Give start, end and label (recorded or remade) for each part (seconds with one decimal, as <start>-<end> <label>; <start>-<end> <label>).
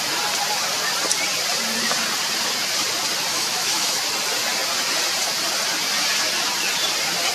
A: 0.0-3.3 recorded; 3.3-4.1 remade; 4.1-7.3 recorded